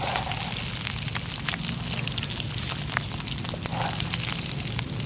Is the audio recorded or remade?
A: recorded